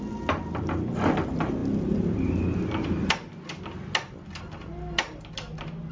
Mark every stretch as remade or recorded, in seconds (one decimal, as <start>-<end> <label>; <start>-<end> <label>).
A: 0.0-5.9 recorded